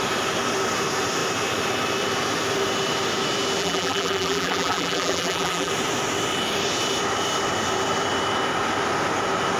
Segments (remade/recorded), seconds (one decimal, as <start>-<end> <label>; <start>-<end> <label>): 0.0-3.6 recorded; 3.6-5.7 remade; 5.7-9.6 recorded